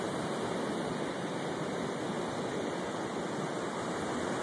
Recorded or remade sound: recorded